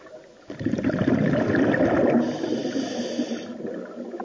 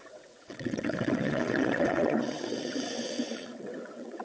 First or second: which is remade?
second